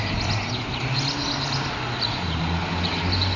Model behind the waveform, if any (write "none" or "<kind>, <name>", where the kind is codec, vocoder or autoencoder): none